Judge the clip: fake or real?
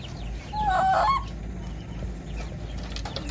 real